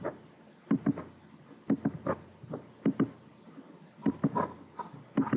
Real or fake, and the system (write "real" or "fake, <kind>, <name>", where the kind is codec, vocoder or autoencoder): real